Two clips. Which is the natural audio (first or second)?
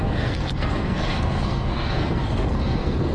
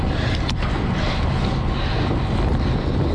second